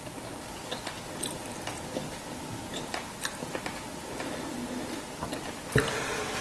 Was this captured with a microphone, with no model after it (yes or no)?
yes